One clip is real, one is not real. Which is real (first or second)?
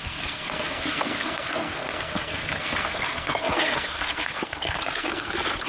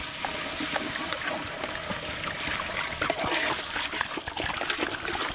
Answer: second